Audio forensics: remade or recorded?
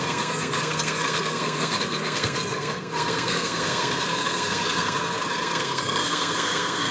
remade